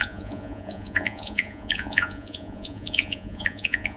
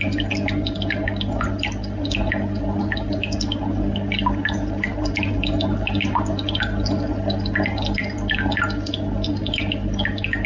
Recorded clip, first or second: second